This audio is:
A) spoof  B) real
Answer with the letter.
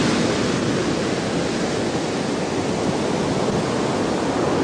B